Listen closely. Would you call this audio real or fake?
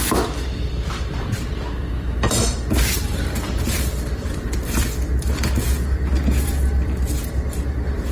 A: fake